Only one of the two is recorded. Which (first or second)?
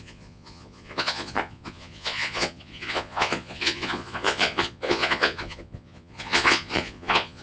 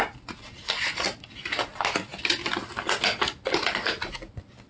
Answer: second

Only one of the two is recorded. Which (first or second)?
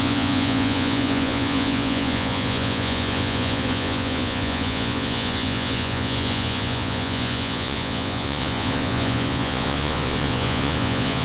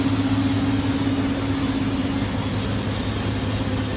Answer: second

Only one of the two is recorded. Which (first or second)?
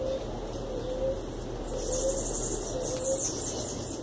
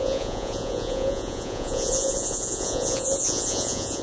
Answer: first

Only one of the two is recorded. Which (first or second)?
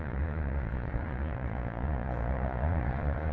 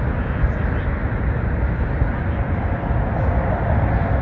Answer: second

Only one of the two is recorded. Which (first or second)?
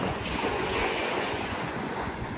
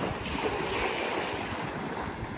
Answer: second